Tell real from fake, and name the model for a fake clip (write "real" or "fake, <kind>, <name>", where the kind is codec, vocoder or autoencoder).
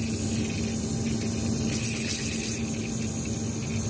real